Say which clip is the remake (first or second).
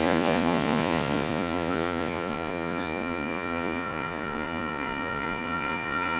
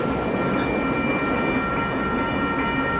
first